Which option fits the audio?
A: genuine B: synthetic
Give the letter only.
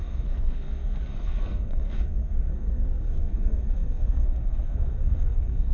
B